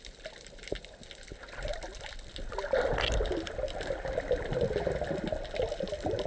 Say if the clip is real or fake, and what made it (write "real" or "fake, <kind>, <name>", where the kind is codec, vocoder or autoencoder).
real